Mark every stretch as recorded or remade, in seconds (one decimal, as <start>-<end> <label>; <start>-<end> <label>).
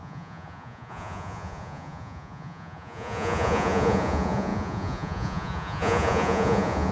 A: 0.0-6.9 remade